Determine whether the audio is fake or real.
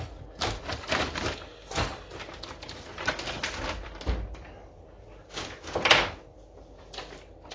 real